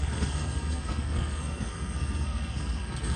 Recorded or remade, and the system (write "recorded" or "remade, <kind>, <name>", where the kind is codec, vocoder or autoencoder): remade, codec, SNAC